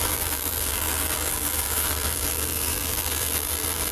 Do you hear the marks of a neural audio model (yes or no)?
yes